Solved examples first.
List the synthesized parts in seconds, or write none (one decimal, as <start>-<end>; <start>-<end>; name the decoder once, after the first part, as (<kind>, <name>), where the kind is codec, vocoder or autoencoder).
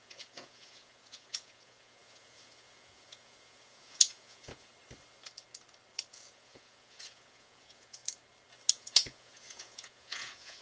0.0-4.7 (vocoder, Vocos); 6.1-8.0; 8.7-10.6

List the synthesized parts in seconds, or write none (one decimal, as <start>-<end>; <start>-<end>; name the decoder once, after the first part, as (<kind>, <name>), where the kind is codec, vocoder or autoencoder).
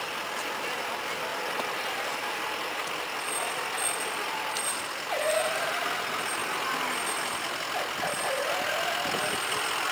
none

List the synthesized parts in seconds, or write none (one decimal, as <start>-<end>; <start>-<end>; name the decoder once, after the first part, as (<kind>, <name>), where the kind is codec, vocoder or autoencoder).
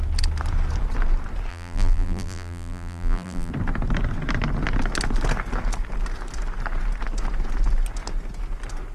1.5-3.5 (vocoder, BigVGAN v2)